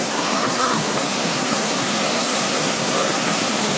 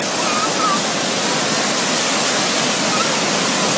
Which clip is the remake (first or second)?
first